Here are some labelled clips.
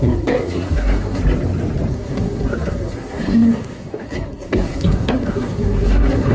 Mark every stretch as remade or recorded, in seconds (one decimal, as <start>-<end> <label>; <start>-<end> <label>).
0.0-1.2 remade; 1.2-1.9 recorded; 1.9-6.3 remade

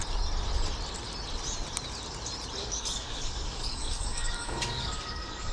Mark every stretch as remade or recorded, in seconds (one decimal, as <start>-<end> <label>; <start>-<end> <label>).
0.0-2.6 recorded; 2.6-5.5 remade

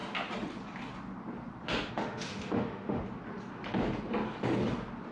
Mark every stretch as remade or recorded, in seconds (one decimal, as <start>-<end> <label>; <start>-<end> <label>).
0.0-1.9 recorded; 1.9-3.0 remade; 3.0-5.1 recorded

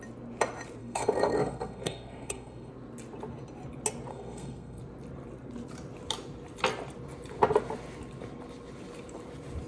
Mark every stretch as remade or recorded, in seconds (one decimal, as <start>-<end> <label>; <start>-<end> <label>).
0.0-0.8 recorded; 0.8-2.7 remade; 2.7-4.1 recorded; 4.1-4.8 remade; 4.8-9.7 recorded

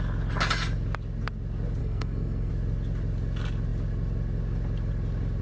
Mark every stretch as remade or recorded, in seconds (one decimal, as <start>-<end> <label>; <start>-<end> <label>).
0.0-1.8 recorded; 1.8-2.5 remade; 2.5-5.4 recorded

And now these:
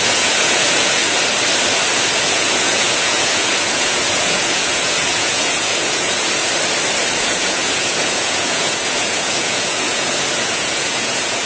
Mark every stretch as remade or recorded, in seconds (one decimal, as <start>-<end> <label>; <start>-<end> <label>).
0.0-1.0 remade; 1.0-2.2 recorded; 2.2-6.4 remade; 6.4-7.2 recorded; 7.2-11.5 remade

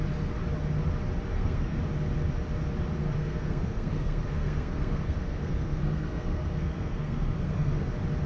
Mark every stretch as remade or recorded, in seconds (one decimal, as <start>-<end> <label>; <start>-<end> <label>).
0.0-1.3 recorded; 1.3-1.8 remade; 1.8-3.0 recorded; 3.0-7.9 remade; 7.9-8.3 recorded